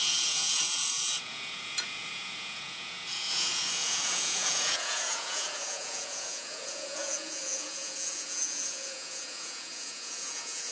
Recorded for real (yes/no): no